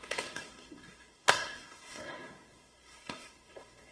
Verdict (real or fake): fake